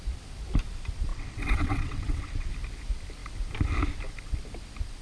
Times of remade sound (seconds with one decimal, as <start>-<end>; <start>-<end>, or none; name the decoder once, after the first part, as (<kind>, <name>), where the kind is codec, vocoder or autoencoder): 1.1-2.5 (vocoder, WaveNeXt)